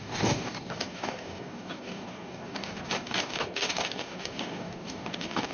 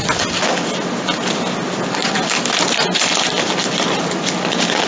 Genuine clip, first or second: second